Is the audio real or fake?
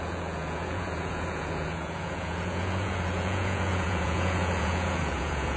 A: fake